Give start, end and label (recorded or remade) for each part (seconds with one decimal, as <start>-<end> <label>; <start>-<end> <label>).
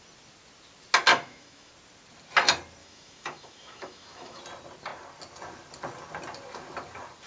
0.0-1.1 recorded; 1.1-1.7 remade; 1.7-2.8 recorded; 2.8-4.4 remade; 4.4-7.3 recorded